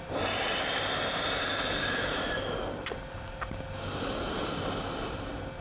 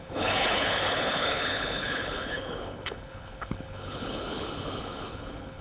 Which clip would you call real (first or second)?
first